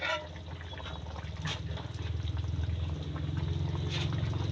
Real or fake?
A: real